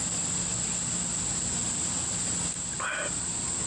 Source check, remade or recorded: recorded